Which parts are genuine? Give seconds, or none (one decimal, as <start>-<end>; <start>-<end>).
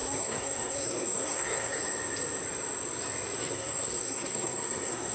1.8-3.4